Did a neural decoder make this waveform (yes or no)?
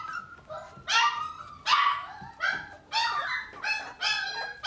no